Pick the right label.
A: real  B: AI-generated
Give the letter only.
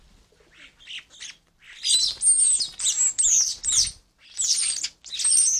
A